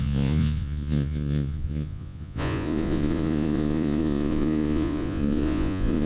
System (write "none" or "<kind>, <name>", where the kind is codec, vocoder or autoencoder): vocoder, Vocos